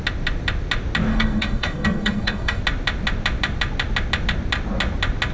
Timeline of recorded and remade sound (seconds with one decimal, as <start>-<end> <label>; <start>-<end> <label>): 0.0-1.1 recorded; 1.1-2.6 remade; 2.6-5.3 recorded